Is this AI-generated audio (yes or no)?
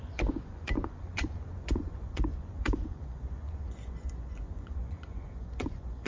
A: yes